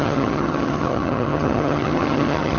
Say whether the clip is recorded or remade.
remade